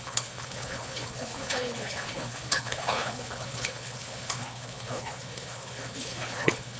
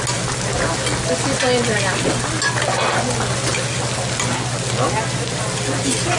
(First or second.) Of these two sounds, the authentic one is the second